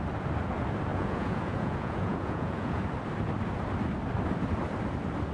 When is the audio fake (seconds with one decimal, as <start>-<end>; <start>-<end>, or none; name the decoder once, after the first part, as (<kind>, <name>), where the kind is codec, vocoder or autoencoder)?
0.9-2.8 (vocoder, Vocos)